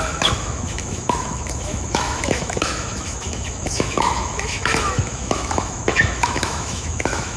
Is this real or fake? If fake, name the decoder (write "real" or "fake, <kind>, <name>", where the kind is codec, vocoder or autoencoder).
fake, autoencoder, DAC-VAE